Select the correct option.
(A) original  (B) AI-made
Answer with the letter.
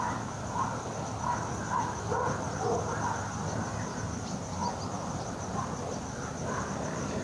A